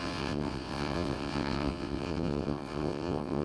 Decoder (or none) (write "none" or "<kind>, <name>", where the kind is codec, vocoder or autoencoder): vocoder, WaveNeXt